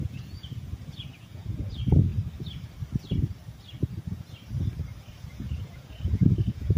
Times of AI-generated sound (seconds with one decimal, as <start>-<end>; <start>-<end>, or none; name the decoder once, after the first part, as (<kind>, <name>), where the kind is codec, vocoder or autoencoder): 0.0-2.1 (vocoder, Vocos); 5.1-6.8